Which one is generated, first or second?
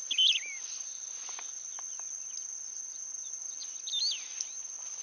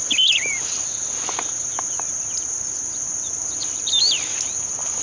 second